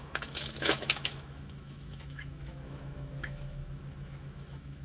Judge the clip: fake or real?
fake